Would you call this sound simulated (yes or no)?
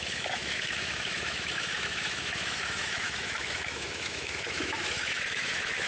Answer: yes